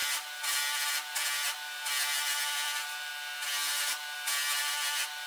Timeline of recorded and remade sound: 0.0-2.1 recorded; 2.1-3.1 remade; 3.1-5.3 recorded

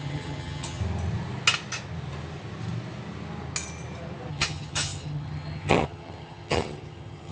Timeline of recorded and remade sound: 0.0-0.8 remade; 0.8-4.3 recorded; 4.3-7.3 remade

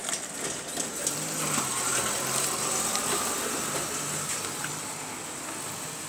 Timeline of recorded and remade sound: 0.0-6.1 recorded

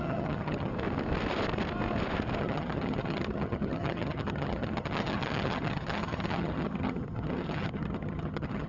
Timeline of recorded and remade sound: 0.0-0.7 remade; 0.7-2.4 recorded; 2.4-8.7 remade

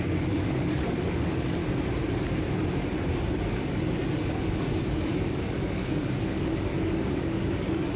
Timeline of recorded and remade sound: 0.0-1.6 remade; 1.6-3.4 recorded; 3.4-8.0 remade

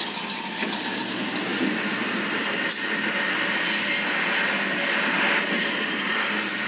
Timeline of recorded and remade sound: 0.0-6.7 recorded

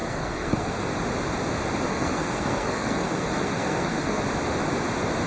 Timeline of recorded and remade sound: 0.0-0.8 remade; 0.8-1.9 recorded; 1.9-4.2 remade; 4.2-5.3 recorded